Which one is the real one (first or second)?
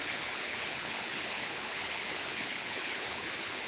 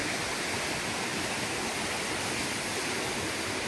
second